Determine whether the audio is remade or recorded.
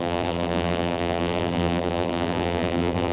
remade